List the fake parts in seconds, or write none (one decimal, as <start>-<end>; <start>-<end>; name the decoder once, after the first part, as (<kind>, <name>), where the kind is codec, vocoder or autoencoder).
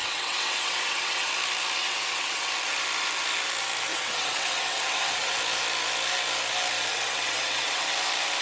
0.0-1.3 (vocoder, WaveNeXt); 1.8-2.5; 3.9-5.3; 6.9-7.9